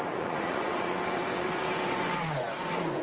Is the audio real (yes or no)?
no